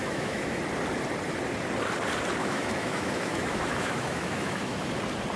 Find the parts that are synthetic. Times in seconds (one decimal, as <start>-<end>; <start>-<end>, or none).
0.0-0.6; 2.4-4.9